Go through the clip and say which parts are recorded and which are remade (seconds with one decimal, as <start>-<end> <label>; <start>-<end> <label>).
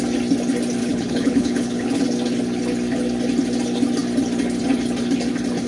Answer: 0.0-0.8 recorded; 0.8-2.0 remade; 2.0-5.7 recorded